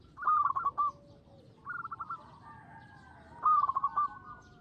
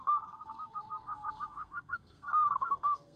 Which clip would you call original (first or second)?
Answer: first